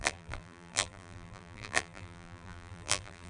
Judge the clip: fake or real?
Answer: fake